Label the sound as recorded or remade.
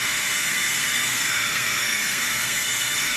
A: remade